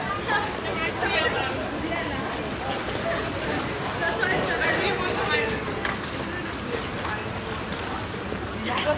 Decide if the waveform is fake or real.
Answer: real